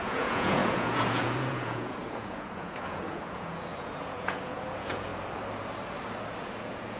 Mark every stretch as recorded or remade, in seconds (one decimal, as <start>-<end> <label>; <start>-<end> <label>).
0.0-5.1 remade; 5.1-6.4 recorded; 6.4-7.0 remade